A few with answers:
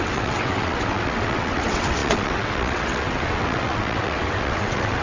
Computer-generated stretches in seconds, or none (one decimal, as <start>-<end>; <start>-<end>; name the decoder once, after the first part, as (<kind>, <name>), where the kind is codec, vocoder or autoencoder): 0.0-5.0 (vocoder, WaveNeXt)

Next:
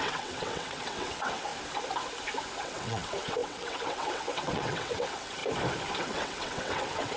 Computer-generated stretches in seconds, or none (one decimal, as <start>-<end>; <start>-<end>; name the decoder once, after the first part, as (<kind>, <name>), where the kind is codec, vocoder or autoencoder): 0.0-1.5 (vocoder, WaveNeXt); 2.6-5.4; 6.0-7.2

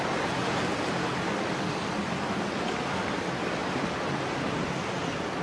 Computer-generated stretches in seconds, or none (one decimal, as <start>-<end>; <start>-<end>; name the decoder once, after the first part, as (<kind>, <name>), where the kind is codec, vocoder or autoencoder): none

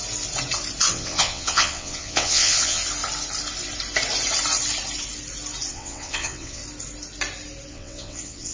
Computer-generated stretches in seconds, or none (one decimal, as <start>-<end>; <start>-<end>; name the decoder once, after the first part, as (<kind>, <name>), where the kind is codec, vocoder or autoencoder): 0.9-2.8 (vocoder, WaveNeXt); 5.7-6.6; 7.7-8.5

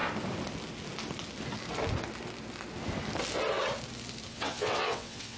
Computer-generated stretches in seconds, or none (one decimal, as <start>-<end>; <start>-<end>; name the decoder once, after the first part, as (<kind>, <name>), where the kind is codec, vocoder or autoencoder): 4.3-5.4 (vocoder, WaveNeXt)

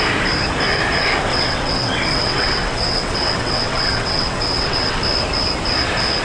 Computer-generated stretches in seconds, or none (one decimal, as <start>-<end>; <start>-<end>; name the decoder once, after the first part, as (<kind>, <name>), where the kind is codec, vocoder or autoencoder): 1.3-5.0 (vocoder, WaveNeXt)